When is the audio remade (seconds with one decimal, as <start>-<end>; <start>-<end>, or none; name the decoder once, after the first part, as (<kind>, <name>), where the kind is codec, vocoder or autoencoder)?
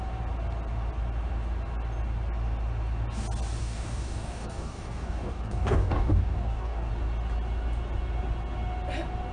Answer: 3.6-6.9 (codec, DAC)